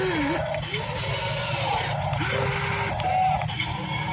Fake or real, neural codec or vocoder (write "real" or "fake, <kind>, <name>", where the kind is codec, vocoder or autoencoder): real